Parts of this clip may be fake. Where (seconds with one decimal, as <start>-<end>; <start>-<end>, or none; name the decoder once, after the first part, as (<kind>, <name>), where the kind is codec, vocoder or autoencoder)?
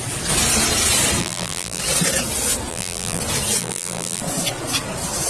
1.2-1.8 (vocoder, BigVGAN v2); 2.7-3.2; 3.6-4.2